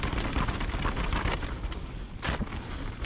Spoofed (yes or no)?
no